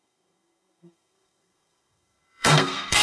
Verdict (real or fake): fake